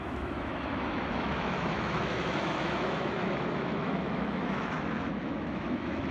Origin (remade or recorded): remade